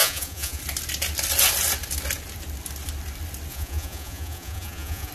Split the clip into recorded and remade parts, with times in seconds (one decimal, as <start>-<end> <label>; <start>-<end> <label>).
0.0-0.6 remade; 0.6-3.5 recorded; 3.5-5.1 remade